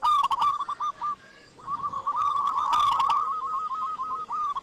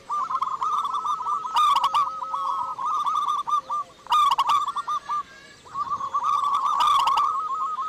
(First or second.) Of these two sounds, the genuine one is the second